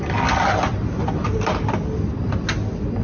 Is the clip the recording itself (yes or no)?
yes